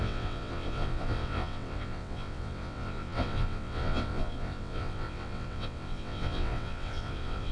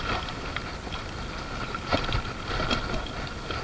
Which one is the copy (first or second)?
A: first